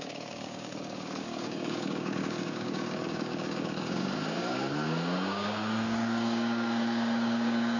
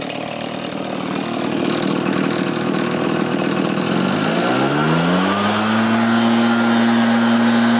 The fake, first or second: first